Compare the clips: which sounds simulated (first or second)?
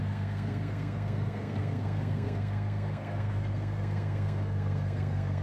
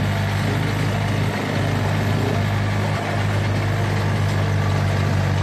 first